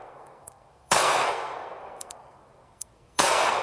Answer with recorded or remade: remade